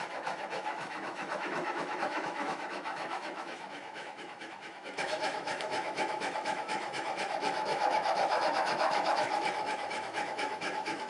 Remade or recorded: remade